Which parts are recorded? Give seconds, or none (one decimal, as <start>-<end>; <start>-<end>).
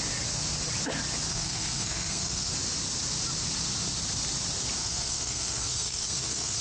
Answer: 0.0-1.3; 2.5-4.8